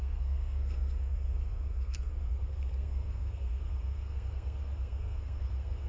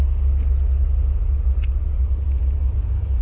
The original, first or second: second